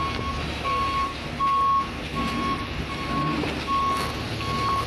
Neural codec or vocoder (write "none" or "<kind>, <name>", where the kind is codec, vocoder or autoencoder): none